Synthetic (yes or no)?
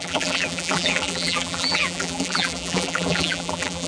yes